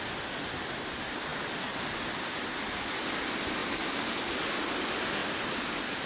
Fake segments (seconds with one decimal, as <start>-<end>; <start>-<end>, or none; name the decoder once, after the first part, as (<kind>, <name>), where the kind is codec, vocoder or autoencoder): none